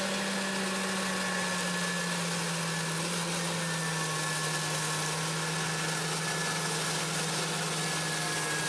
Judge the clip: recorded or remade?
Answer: recorded